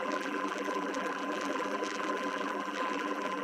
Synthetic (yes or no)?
yes